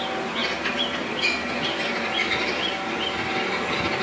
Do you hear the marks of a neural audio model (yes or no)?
no